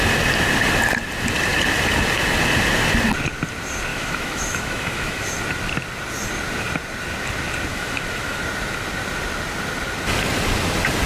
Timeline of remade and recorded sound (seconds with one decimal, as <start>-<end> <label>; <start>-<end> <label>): 0.0-3.9 recorded; 3.9-5.3 remade; 5.3-7.7 recorded; 7.7-8.4 remade; 8.4-11.1 recorded